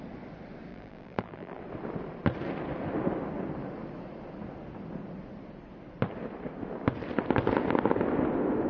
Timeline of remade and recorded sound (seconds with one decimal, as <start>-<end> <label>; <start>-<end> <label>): 0.0-0.7 recorded; 0.7-1.6 remade; 1.6-8.7 recorded